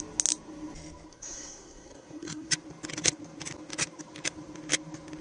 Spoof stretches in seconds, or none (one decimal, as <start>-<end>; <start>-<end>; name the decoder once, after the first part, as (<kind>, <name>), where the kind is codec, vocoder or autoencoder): 1.1-2.5 (codec, SNAC)